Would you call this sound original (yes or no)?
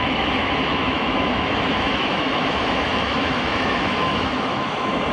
no